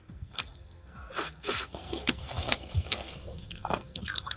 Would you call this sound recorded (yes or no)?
no